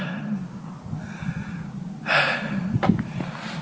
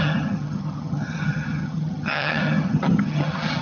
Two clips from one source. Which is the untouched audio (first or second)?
first